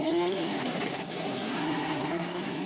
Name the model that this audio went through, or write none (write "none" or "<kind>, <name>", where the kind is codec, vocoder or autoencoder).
codec, SNAC